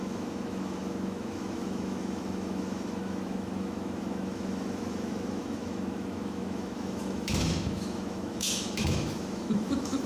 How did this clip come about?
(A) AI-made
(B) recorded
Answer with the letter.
A